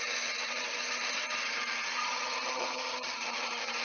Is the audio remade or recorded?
remade